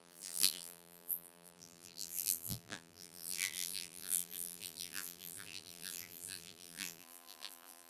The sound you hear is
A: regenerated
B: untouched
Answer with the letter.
A